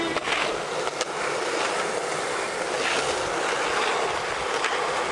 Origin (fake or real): real